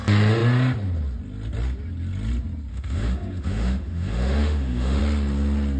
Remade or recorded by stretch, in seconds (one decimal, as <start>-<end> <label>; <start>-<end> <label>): 0.0-2.7 recorded; 2.7-5.0 remade; 5.0-5.8 recorded